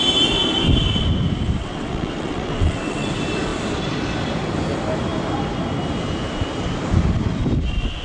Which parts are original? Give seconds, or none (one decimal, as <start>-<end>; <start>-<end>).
0.0-1.6; 3.1-8.0